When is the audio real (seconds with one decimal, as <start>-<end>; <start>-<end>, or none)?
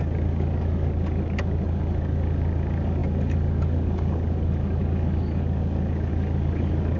none